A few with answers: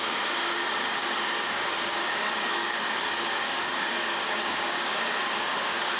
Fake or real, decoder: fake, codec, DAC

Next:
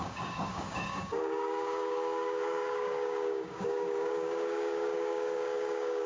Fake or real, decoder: fake, codec, DAC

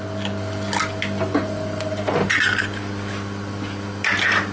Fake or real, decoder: real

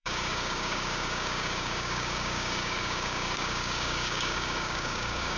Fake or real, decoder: fake, codec, DAC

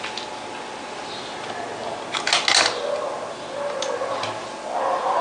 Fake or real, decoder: real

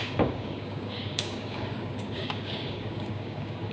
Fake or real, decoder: fake, codec, DAC